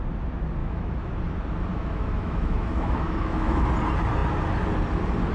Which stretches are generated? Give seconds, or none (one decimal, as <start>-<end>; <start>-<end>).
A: 0.6-1.1; 1.7-3.7